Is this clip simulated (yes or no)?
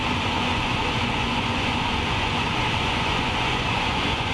yes